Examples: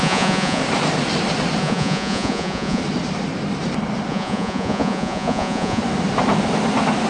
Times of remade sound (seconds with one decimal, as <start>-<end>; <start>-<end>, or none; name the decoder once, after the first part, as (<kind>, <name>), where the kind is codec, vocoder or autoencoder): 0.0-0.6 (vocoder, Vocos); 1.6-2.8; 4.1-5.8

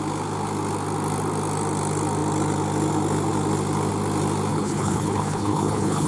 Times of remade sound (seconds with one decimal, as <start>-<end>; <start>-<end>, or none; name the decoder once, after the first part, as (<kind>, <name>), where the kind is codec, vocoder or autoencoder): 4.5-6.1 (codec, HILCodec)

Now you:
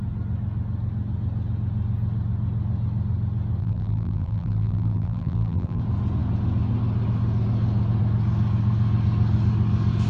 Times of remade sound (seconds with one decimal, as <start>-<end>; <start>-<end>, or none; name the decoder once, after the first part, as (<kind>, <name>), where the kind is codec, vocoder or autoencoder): 3.6-5.8 (vocoder, BigVGAN v2)